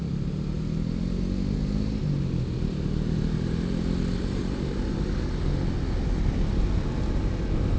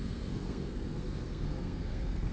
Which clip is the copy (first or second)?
second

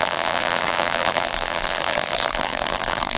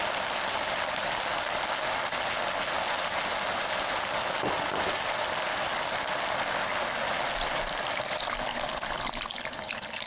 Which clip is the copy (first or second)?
first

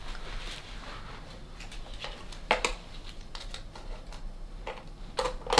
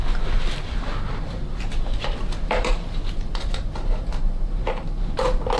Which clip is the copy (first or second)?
second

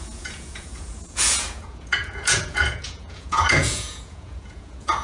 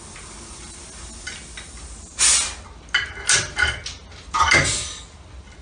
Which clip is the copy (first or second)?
first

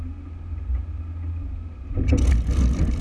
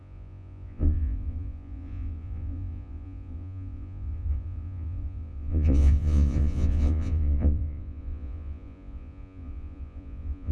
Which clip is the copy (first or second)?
second